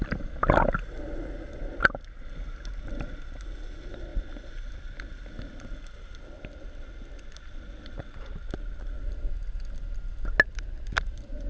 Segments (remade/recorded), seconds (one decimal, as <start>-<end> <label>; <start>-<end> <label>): 0.0-11.5 recorded